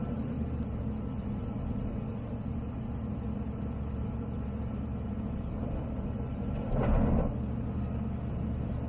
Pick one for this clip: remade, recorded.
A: recorded